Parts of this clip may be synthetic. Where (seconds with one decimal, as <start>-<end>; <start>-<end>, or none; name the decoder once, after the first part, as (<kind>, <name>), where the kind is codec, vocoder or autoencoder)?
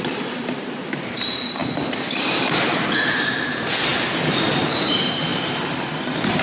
0.0-1.6 (vocoder, BigVGAN v2); 2.3-3.9; 4.6-5.3